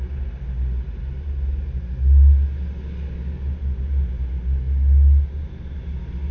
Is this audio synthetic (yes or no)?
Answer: no